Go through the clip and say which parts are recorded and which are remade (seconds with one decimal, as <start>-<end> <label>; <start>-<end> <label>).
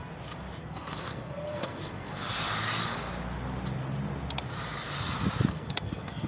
0.0-0.6 recorded; 0.6-2.3 remade; 2.3-5.5 recorded; 5.5-6.3 remade